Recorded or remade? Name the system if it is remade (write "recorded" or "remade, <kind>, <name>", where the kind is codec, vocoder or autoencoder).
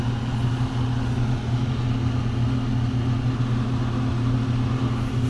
recorded